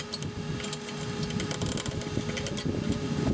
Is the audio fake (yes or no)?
no